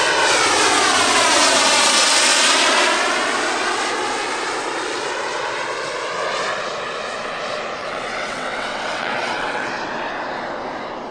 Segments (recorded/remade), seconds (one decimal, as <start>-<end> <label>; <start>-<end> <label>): 0.0-7.8 recorded; 7.8-9.7 remade; 9.7-11.1 recorded